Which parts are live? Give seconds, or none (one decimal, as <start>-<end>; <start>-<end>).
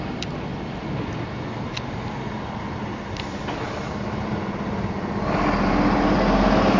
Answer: 0.0-6.8